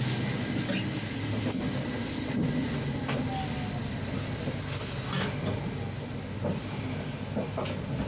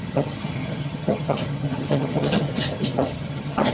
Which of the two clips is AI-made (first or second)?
second